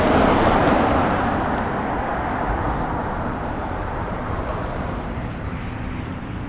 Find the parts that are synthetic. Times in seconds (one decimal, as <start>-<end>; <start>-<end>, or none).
0.0-0.6; 3.0-6.5